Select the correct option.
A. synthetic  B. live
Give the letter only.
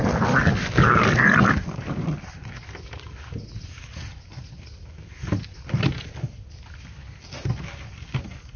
B